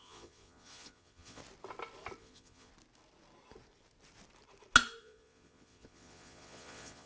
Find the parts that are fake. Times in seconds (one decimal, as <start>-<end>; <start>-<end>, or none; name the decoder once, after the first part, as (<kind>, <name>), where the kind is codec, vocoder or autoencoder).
0.0-1.4 (vocoder, Vocos); 2.2-2.7; 5.0-7.1